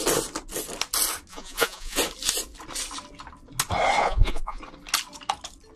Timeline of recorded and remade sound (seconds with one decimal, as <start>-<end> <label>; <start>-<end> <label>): 0.0-1.3 recorded; 1.3-2.0 remade; 2.0-4.0 recorded; 4.0-4.6 remade; 4.6-5.8 recorded